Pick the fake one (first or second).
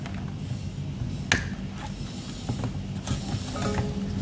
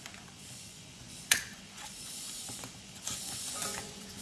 second